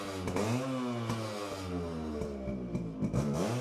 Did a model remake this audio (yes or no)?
no